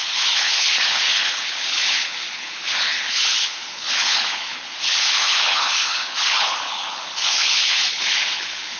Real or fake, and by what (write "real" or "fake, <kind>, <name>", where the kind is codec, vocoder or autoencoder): fake, codec, HILCodec